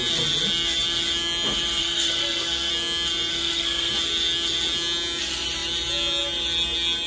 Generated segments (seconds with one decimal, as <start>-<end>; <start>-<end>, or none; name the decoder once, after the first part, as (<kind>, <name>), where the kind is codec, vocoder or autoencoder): 1.8-2.7 (codec, SNAC); 3.3-3.9